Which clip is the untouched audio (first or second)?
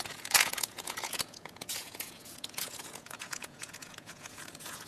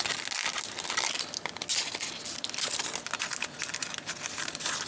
second